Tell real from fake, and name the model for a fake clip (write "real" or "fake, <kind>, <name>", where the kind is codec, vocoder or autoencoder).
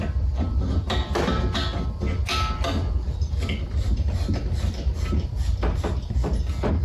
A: real